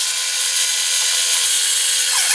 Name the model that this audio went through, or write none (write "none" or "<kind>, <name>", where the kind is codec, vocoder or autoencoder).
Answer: vocoder, WaveNeXt